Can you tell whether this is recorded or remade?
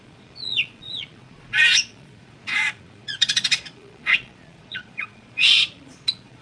remade